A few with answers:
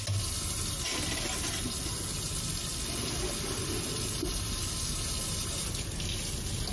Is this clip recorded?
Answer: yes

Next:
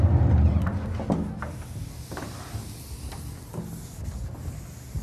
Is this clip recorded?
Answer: yes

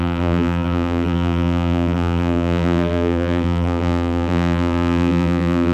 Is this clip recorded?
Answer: no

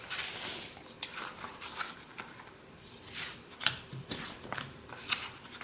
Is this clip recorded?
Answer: no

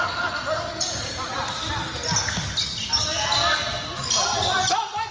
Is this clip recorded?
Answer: yes